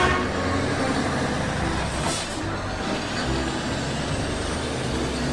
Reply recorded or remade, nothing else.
recorded